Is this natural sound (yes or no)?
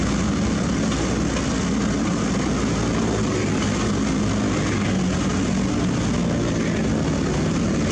yes